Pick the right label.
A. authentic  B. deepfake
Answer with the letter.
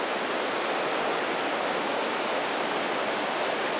A